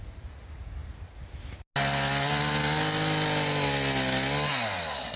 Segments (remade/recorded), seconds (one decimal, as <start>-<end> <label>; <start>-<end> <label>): 0.0-5.2 recorded